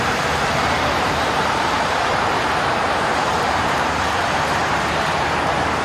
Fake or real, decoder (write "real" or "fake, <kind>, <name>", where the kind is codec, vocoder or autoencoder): fake, vocoder, BigVGAN v2